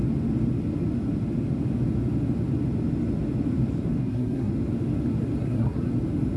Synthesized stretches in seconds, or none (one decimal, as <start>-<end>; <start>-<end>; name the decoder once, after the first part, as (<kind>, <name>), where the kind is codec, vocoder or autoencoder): 4.0-4.5 (codec, SNAC); 5.4-5.9